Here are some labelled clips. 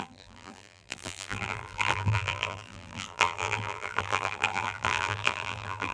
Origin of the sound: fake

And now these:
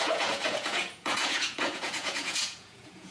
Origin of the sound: fake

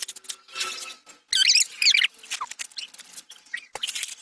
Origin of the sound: real